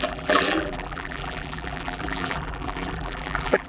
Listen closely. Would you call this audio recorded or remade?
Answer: remade